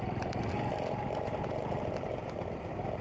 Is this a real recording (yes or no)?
yes